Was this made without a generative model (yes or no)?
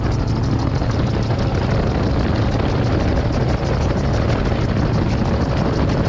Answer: yes